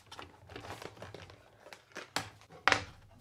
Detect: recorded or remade recorded